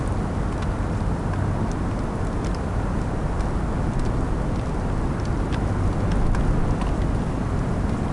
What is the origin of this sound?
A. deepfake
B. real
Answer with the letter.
B